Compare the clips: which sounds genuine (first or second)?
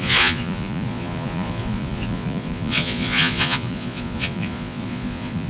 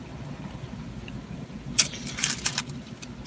second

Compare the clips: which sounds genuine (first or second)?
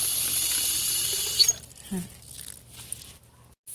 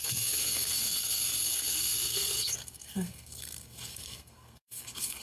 first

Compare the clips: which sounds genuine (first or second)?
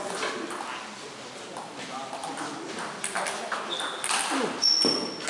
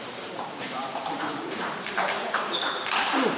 first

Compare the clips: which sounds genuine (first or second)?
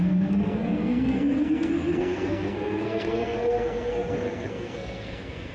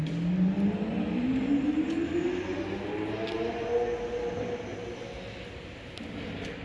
second